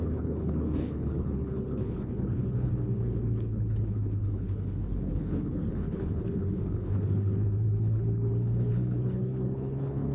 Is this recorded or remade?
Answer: remade